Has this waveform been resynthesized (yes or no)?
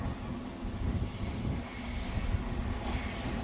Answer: no